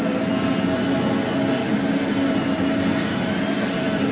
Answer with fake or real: real